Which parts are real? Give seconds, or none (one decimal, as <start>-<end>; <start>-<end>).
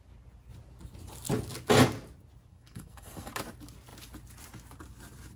0.0-2.5; 3.3-5.4